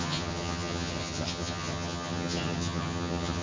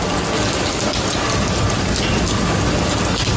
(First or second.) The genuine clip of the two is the second